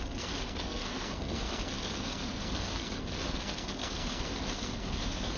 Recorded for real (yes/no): no